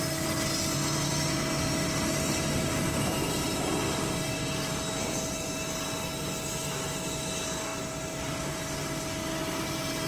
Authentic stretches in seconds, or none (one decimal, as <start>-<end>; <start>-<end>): 0.0-10.1